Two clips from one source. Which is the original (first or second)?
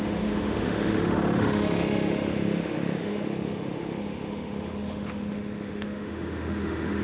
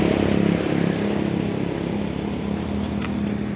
second